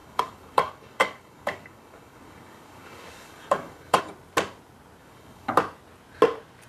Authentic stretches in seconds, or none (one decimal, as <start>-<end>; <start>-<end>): 4.0-5.0; 5.5-6.7